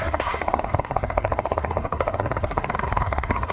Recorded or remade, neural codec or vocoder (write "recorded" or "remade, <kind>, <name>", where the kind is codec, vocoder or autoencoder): remade, codec, SNAC